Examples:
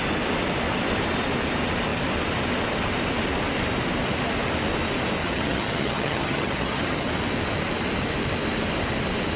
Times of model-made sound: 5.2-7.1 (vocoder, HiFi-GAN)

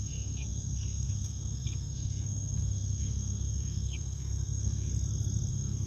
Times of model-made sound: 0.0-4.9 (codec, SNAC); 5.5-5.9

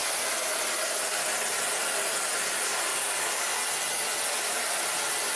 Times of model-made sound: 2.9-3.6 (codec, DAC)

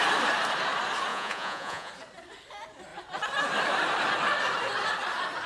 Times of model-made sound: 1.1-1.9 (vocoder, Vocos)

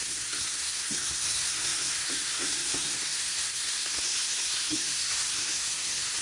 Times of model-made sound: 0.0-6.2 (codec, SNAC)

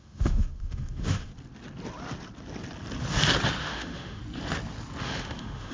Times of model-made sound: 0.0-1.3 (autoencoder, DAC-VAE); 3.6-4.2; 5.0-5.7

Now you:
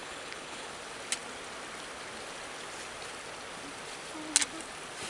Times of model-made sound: 0.0-0.7 (codec, HILCodec)